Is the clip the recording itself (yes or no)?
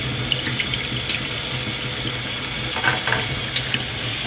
yes